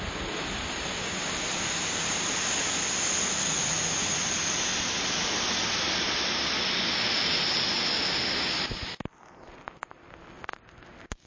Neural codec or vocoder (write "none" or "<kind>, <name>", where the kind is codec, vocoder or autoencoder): none